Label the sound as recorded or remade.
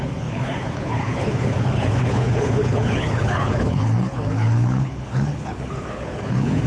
remade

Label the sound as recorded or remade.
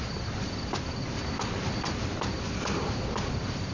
recorded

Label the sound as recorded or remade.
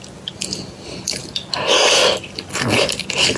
recorded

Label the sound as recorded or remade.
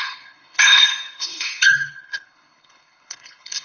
remade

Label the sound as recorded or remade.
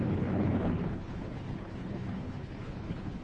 remade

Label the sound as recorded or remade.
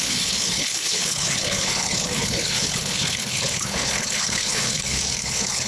remade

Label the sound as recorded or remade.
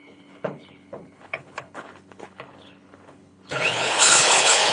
remade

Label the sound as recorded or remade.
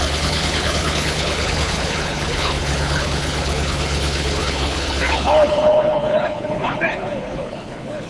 remade